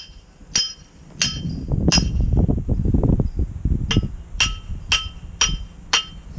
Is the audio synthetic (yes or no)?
no